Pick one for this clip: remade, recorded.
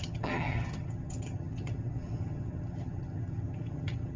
remade